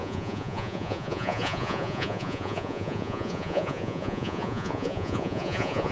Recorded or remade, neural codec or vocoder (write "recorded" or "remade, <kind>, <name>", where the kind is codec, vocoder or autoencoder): remade, vocoder, Vocos